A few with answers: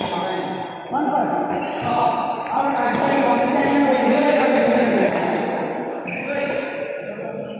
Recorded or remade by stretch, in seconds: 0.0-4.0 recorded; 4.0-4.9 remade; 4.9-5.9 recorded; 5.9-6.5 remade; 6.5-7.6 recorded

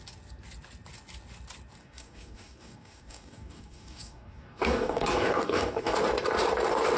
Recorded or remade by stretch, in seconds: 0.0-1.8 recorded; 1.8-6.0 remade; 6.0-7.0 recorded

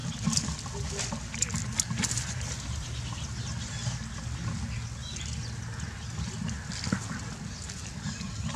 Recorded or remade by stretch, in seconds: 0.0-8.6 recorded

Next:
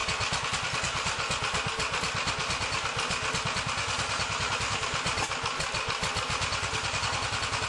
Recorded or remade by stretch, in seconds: 0.0-7.7 recorded

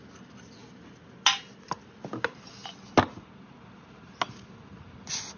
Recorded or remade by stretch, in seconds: 0.0-5.4 recorded

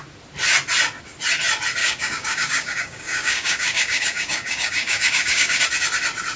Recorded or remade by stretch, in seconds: 0.0-1.8 recorded; 1.8-5.6 remade; 5.6-6.4 recorded

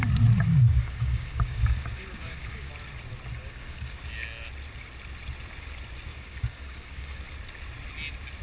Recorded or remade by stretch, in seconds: 0.0-0.5 recorded; 0.5-2.7 remade; 2.7-3.3 recorded; 3.3-4.0 remade; 4.0-6.1 recorded; 6.1-7.2 remade; 7.2-8.4 recorded

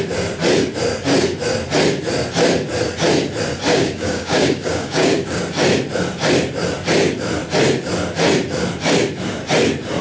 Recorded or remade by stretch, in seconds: 0.0-3.7 recorded; 3.7-5.4 remade; 5.4-10.0 recorded